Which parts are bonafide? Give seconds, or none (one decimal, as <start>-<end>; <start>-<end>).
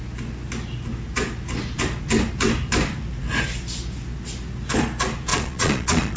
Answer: 0.0-5.3